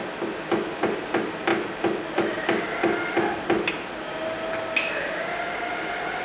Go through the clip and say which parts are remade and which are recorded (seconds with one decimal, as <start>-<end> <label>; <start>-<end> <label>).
0.0-6.2 recorded